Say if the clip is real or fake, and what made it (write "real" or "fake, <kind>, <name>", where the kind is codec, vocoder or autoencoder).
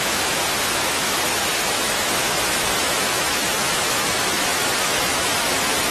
fake, autoencoder, DAC-VAE